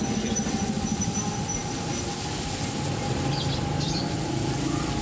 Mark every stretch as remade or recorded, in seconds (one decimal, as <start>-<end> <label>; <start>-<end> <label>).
0.0-5.0 recorded